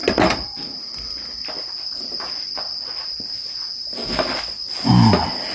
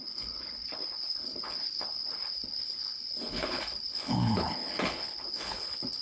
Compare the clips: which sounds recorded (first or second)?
first